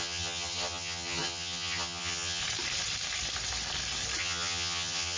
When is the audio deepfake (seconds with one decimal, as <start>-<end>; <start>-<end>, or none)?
0.0-2.4; 4.2-5.2